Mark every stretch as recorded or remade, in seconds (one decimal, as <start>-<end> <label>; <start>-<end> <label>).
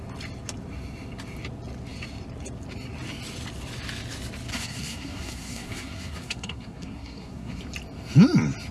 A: 0.0-4.5 recorded; 4.5-7.6 remade; 7.6-8.7 recorded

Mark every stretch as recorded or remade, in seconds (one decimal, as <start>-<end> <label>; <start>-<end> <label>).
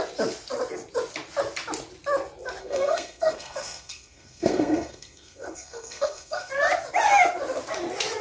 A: 0.0-2.6 recorded; 2.6-6.5 remade; 6.5-8.2 recorded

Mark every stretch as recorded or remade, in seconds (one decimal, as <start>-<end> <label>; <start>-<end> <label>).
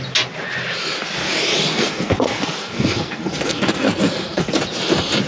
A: 0.0-1.7 recorded; 1.7-4.6 remade; 4.6-5.3 recorded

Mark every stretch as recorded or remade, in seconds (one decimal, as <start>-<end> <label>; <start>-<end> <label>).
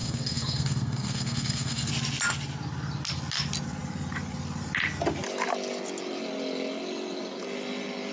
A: 0.0-1.9 remade; 1.9-8.1 recorded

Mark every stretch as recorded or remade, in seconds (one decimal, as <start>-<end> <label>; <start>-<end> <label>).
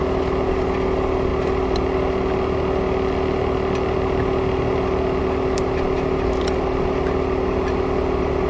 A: 0.0-8.5 recorded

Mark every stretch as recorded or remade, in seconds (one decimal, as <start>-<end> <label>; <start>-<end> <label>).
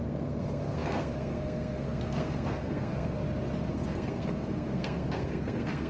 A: 0.0-3.2 remade; 3.2-3.7 recorded; 3.7-5.9 remade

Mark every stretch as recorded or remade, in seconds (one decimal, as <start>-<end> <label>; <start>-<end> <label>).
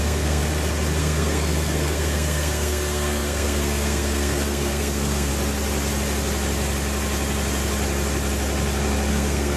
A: 0.0-0.4 remade; 0.4-1.0 recorded; 1.0-5.3 remade; 5.3-9.1 recorded; 9.1-9.6 remade